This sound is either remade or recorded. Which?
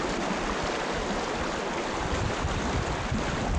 recorded